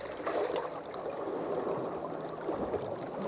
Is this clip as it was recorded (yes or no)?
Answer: yes